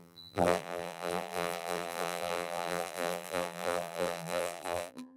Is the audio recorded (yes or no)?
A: no